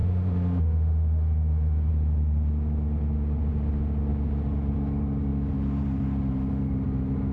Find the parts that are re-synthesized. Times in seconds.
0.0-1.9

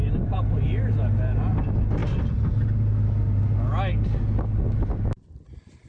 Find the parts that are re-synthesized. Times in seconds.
none

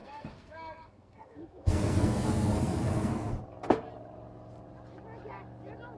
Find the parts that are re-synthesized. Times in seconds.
0.0-3.3

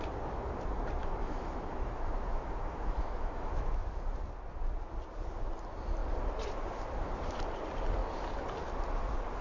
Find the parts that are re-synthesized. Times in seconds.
1.0-4.1